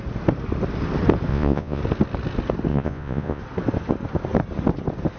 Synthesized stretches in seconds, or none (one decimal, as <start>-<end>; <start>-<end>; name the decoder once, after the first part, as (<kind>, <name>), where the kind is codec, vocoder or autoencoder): 1.3-1.8 (vocoder, Vocos); 2.7-3.4